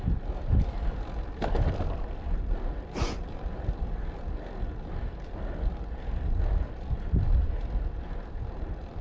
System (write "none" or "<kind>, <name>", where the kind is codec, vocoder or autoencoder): none